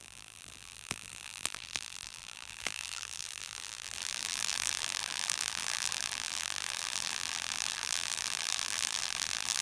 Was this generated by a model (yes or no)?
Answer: yes